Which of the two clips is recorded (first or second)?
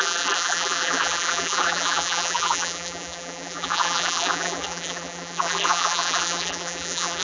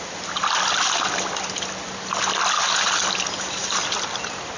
second